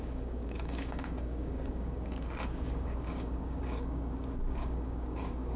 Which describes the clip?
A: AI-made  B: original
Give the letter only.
A